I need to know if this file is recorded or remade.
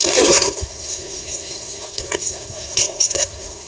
remade